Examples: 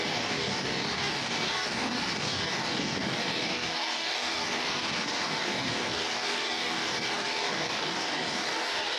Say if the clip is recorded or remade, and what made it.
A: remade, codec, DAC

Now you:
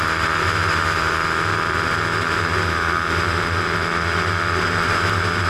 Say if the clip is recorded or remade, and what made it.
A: recorded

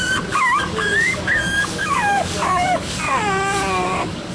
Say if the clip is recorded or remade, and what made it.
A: remade, codec, DAC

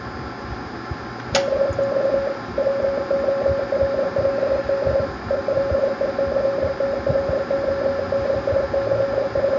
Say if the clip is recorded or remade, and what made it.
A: recorded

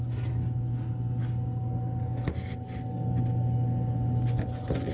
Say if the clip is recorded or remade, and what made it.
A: recorded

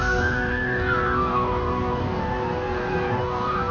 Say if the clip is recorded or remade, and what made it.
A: remade, codec, DAC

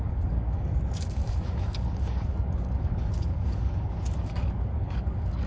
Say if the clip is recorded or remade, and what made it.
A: remade, codec, DAC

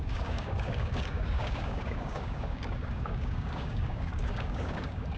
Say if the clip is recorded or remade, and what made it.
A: remade, codec, DAC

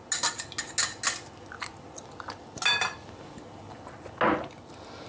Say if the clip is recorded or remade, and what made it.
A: recorded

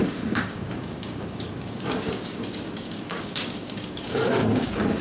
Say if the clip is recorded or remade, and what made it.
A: remade, codec, DAC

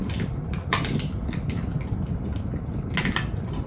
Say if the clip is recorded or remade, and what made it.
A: recorded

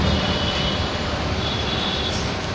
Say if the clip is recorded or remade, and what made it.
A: recorded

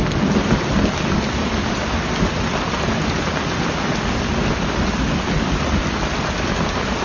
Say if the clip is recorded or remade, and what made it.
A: recorded